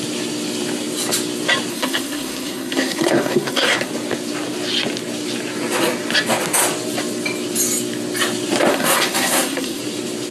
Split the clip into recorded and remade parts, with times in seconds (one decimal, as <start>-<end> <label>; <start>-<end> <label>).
0.0-1.7 recorded; 1.7-3.9 remade; 3.9-8.7 recorded; 8.7-9.8 remade; 9.8-10.3 recorded